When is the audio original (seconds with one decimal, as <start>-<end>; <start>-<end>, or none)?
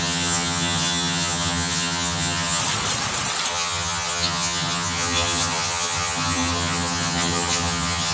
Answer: 2.6-3.5